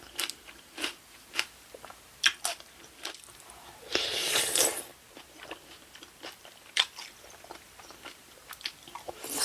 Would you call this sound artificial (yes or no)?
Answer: yes